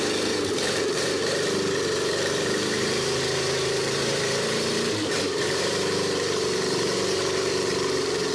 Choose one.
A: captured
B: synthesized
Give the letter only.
B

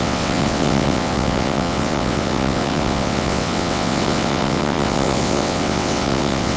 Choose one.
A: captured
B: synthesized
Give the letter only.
B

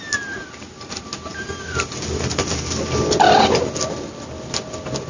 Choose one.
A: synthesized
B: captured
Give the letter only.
B